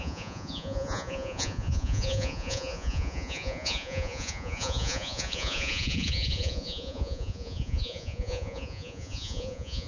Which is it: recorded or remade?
remade